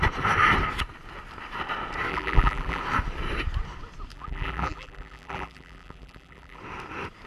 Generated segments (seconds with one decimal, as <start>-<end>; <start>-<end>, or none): 2.1-2.8; 4.1-6.6